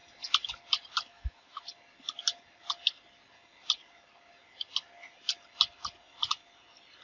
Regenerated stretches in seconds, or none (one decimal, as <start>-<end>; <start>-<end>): 1.1-1.6